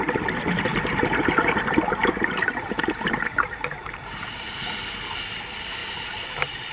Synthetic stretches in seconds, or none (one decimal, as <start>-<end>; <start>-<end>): 0.7-4.7; 5.8-6.7